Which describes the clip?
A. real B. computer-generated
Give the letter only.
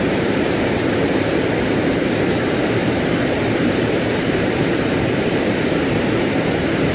B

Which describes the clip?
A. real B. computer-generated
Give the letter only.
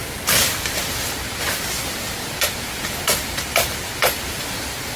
A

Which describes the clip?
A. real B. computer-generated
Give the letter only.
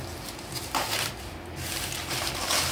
A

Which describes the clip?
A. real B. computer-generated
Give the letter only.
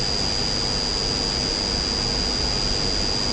A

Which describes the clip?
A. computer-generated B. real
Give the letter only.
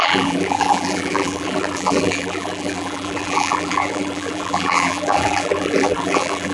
A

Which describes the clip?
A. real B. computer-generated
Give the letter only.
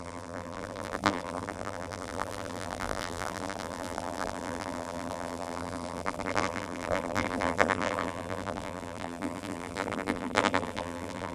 B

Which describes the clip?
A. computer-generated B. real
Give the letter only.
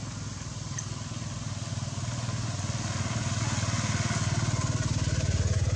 B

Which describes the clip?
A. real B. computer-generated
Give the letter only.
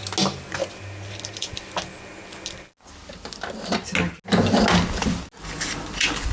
A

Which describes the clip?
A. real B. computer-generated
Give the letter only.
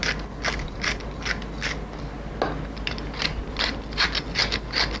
A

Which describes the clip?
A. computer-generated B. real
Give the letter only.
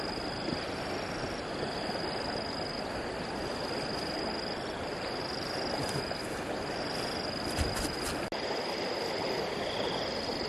B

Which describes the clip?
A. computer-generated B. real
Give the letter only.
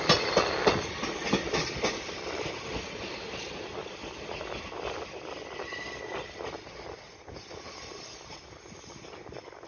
B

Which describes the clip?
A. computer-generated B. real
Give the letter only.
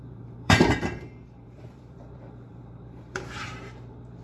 A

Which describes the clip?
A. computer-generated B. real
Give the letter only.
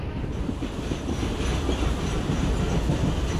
B